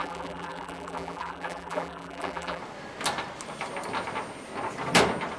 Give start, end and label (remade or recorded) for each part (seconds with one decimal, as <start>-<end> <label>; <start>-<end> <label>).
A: 0.0-2.6 remade; 2.6-5.4 recorded